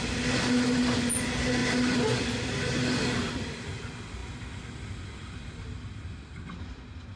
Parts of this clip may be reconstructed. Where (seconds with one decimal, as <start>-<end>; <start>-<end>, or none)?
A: none